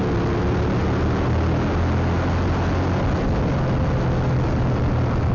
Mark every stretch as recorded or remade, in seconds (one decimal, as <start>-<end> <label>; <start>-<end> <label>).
0.0-5.3 recorded